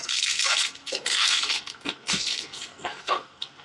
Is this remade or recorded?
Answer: remade